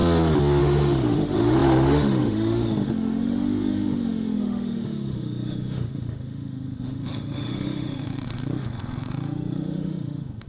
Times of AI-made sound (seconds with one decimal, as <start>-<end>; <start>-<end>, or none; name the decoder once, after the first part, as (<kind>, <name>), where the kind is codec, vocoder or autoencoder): 0.6-10.5 (autoencoder, DAC-VAE)